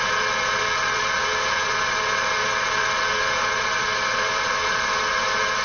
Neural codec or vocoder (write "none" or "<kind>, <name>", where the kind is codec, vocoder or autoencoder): vocoder, Vocos